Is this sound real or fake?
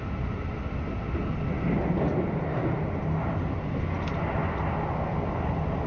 real